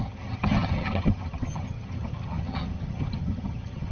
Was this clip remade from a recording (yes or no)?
yes